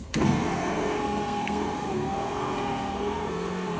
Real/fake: fake